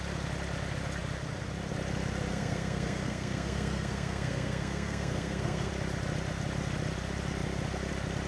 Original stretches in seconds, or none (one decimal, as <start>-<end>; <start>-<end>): 0.0-2.3; 5.7-8.3